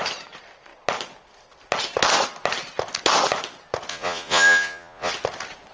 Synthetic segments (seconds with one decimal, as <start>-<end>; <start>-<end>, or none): 3.9-5.1